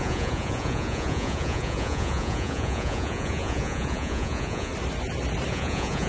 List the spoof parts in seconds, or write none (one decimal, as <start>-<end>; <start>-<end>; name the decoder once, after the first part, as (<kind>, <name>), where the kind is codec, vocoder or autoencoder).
0.0-4.7 (vocoder, Vocos); 5.5-6.1